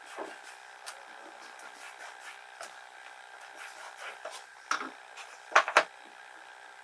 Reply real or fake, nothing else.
fake